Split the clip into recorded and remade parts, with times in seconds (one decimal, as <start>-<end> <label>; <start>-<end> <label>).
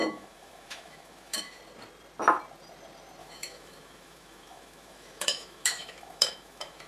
0.0-1.6 remade; 1.6-3.2 recorded; 3.2-6.9 remade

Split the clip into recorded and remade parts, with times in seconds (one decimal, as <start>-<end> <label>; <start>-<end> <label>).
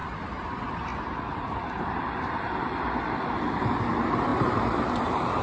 0.0-0.9 recorded; 0.9-2.3 remade; 2.3-4.3 recorded; 4.3-5.4 remade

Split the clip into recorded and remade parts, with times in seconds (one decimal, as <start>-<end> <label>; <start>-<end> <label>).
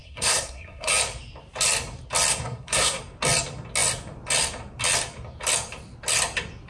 0.0-0.9 remade; 0.9-2.3 recorded; 2.3-3.0 remade; 3.0-6.7 recorded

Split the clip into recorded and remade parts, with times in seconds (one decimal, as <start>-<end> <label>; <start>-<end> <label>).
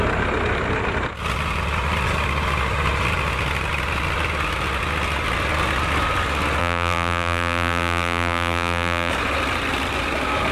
0.0-6.6 recorded; 6.6-9.1 remade; 9.1-10.5 recorded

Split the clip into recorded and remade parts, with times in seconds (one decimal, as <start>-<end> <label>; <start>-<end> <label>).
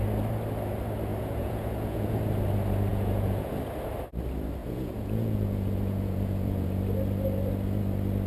0.0-1.1 recorded; 1.1-2.2 remade; 2.2-2.9 recorded; 2.9-3.6 remade; 3.6-4.6 recorded; 4.6-6.8 remade; 6.8-8.3 recorded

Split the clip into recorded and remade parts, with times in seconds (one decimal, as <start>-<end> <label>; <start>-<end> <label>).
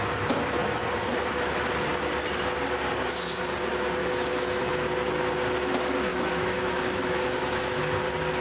0.0-4.0 recorded; 4.0-4.7 remade; 4.7-6.1 recorded; 6.1-7.8 remade; 7.8-8.4 recorded